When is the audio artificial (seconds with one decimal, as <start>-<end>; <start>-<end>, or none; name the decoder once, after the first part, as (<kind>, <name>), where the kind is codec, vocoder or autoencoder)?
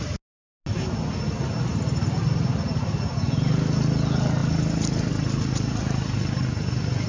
1.7-2.3 (vocoder, BigVGAN v2)